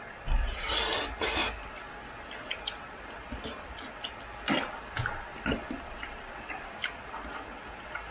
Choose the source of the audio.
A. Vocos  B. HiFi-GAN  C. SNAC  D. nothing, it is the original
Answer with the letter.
D